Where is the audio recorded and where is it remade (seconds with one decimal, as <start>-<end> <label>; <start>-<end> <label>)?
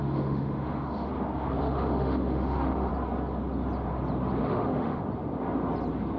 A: 0.0-1.1 remade; 1.1-1.6 recorded; 1.6-2.9 remade; 2.9-4.4 recorded; 4.4-5.0 remade; 5.0-6.2 recorded